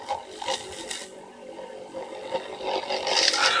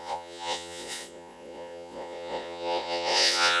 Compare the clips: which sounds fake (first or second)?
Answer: second